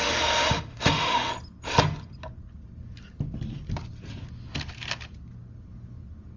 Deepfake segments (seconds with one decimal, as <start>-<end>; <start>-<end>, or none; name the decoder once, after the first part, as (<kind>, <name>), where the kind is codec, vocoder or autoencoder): 0.0-1.3 (autoencoder, DAC-VAE)